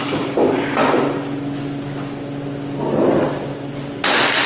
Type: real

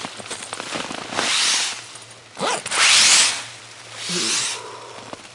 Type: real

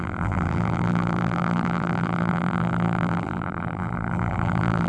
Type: fake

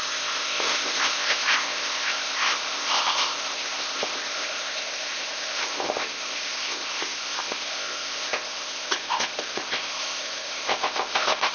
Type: fake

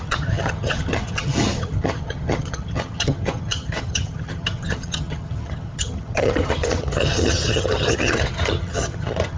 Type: fake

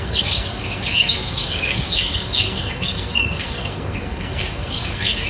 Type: fake